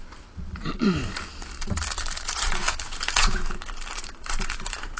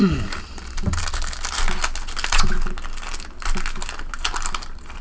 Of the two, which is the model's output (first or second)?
first